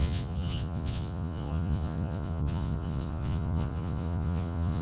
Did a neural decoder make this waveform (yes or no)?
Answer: yes